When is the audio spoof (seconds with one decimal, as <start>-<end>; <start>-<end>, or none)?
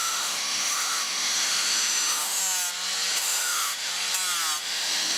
0.0-2.4; 3.1-3.9; 4.6-5.2